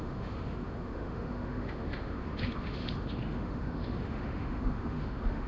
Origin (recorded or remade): remade